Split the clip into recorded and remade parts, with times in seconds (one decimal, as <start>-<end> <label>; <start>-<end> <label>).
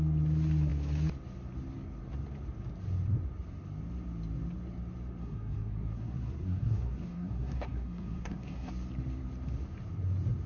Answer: 0.0-5.2 recorded; 5.2-8.7 remade; 8.7-10.5 recorded